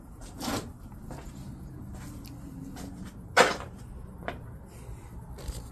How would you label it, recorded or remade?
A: recorded